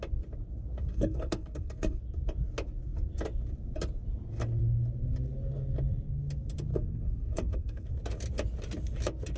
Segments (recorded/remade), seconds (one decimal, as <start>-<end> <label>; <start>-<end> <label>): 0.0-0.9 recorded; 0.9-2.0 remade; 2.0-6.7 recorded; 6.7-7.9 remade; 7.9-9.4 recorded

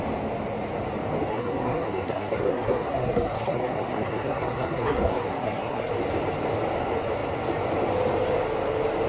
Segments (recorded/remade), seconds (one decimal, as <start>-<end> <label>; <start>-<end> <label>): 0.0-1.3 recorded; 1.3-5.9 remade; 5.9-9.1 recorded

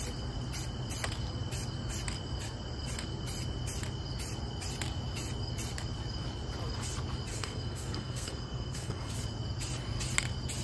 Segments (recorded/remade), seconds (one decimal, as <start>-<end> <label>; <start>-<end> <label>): 0.0-7.3 recorded; 7.3-9.1 remade; 9.1-10.6 recorded